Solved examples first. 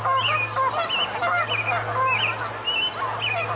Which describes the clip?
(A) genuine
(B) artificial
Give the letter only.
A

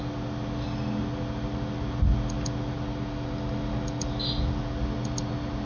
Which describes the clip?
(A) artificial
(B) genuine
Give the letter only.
B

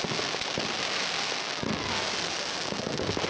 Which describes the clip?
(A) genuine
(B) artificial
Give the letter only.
A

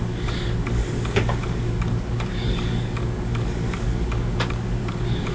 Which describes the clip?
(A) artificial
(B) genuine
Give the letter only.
A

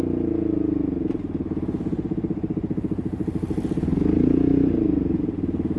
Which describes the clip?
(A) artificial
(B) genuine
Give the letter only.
B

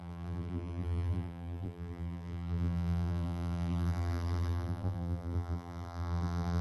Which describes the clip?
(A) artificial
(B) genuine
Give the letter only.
A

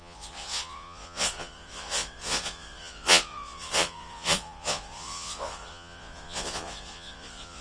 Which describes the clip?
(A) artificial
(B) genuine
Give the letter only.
A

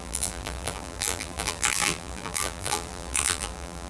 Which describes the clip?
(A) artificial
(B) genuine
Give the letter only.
A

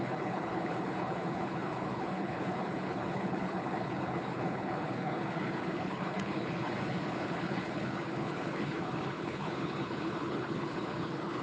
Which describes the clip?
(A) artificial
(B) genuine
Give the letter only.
A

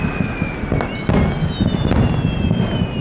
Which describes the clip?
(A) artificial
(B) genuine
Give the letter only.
B